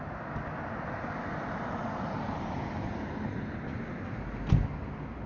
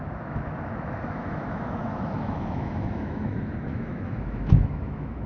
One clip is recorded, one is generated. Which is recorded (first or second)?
first